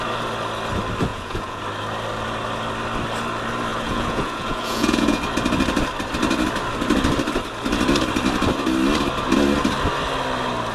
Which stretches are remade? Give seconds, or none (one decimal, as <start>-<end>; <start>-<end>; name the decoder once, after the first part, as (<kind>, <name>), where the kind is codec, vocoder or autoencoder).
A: 1.1-1.6 (vocoder, Vocos); 3.7-5.2